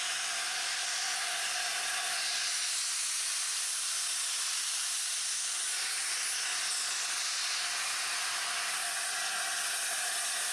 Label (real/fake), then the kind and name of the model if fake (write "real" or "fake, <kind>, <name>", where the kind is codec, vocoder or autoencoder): real